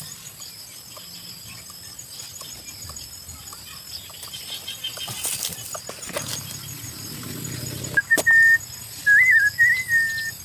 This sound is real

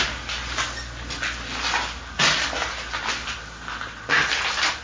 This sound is real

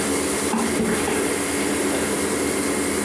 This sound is real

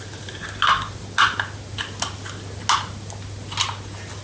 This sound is real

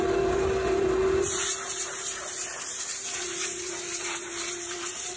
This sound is fake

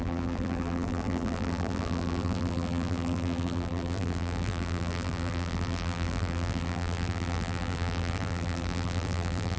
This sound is fake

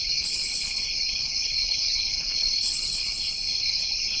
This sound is fake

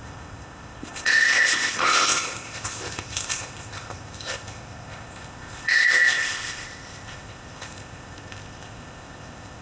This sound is fake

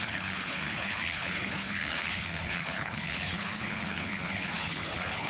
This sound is fake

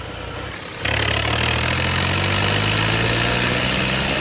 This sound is real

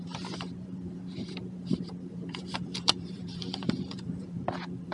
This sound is fake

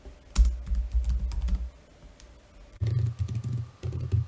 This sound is real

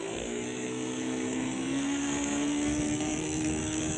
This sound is fake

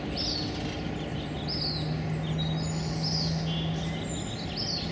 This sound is real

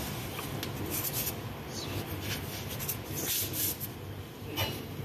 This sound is real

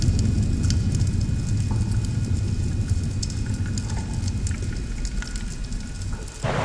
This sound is real